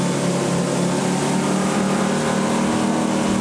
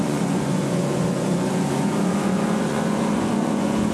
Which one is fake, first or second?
second